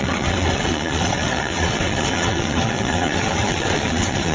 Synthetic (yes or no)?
yes